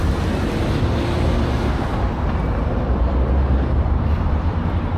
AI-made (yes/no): no